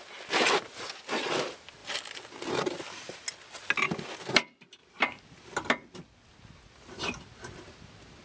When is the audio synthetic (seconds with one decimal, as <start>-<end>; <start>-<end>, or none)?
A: none